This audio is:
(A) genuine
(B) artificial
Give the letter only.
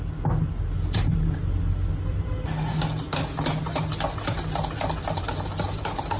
A